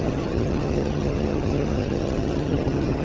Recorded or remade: remade